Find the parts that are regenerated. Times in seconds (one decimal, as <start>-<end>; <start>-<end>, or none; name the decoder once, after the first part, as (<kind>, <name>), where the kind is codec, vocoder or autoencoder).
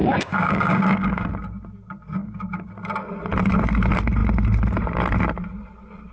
0.0-1.3 (codec, DAC); 2.2-2.7